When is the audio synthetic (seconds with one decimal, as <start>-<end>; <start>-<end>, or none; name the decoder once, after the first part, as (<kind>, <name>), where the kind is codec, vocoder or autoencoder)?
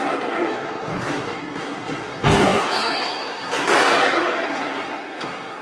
0.0-5.6 (codec, SNAC)